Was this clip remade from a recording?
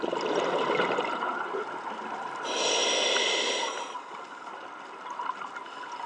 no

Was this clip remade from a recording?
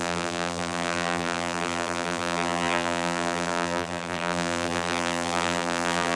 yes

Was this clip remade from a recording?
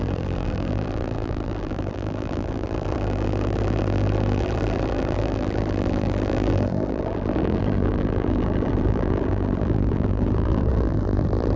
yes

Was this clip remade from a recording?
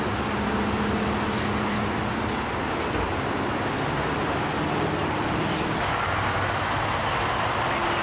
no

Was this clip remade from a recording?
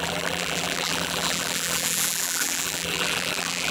yes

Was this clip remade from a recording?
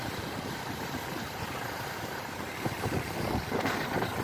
yes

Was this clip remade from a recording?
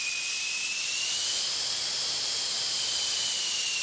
no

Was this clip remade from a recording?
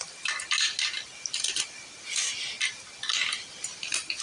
no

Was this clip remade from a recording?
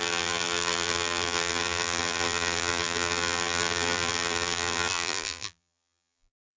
yes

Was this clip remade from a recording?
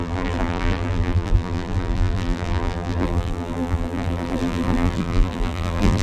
yes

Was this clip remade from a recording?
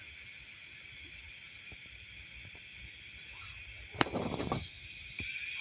no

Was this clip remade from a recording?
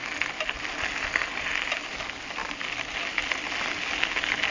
no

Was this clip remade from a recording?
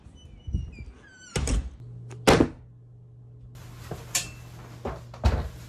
no